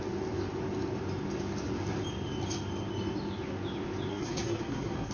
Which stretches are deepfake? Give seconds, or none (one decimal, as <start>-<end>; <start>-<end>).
4.1-5.1